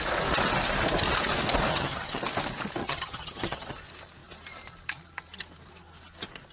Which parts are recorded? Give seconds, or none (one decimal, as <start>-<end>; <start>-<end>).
0.0-1.7; 2.2-2.8; 3.7-6.5